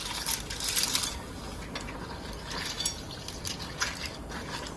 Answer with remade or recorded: recorded